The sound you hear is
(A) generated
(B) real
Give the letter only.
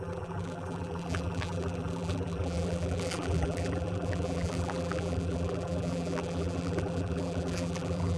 A